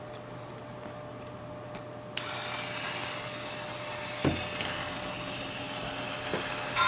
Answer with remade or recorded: recorded